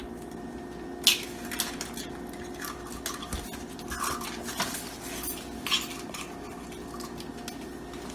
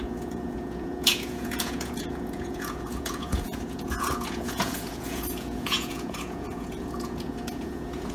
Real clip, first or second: first